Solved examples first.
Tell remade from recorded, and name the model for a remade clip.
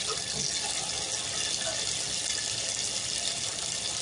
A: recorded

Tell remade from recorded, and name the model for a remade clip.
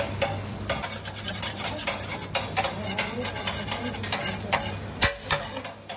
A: recorded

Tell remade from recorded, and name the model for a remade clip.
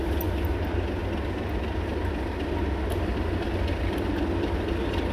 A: recorded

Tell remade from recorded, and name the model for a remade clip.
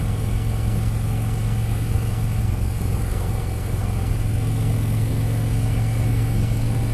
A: remade, codec, SNAC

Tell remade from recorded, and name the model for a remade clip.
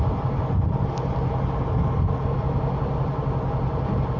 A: recorded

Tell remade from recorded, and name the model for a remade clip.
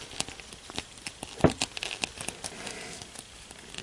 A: recorded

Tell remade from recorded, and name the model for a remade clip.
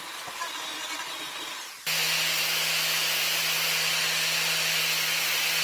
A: recorded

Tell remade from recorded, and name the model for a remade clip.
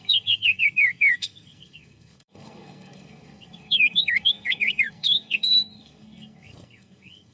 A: remade, codec, SNAC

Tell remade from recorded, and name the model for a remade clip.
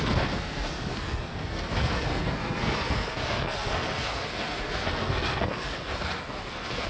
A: remade, codec, SNAC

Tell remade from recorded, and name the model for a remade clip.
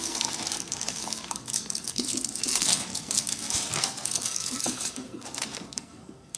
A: remade, codec, SNAC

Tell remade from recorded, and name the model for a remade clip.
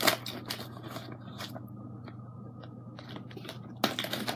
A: recorded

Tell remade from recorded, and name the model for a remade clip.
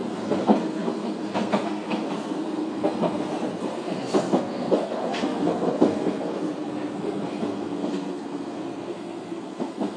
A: remade, codec, SNAC